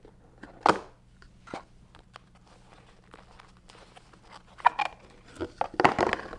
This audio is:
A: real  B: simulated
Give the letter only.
A